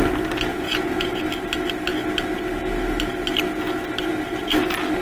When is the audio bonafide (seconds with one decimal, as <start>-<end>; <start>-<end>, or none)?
0.0-0.5; 1.2-5.0